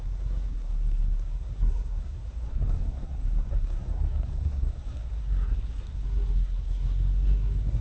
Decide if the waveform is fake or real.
fake